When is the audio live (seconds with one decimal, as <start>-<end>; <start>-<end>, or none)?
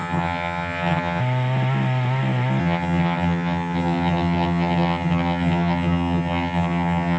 1.2-2.6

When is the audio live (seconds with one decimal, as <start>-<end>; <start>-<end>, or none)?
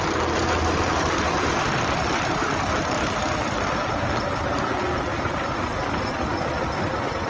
0.0-7.3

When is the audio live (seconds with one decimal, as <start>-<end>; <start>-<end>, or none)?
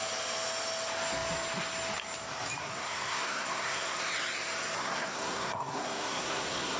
0.0-2.6; 4.0-4.8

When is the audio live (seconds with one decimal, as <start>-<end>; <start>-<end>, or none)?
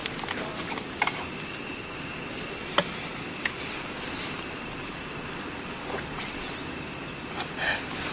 0.0-8.1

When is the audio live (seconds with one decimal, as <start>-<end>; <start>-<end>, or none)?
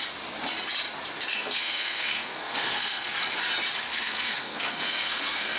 0.0-1.3; 3.1-3.9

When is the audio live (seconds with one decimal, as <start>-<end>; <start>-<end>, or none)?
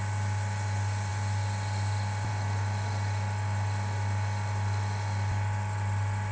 0.0-6.3